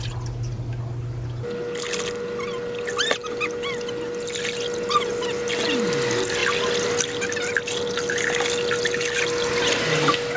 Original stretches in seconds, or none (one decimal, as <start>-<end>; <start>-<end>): 0.0-10.4